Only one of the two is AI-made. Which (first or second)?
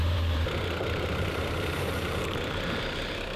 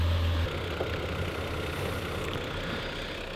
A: first